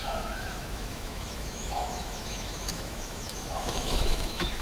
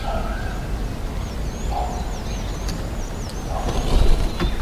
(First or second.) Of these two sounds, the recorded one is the second